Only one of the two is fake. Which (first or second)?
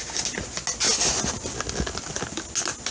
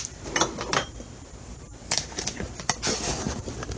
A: second